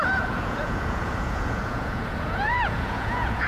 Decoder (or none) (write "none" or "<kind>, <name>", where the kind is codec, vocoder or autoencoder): vocoder, Vocos